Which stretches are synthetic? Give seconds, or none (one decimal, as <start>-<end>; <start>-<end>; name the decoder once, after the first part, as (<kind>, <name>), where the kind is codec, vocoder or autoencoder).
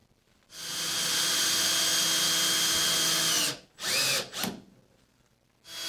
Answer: 0.0-1.7 (vocoder, BigVGAN v2)